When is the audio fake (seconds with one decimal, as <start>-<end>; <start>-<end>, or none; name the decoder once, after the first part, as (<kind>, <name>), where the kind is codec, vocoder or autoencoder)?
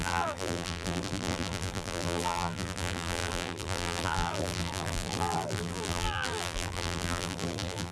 0.0-7.9 (vocoder, BigVGAN v2)